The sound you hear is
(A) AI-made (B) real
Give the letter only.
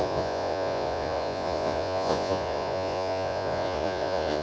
A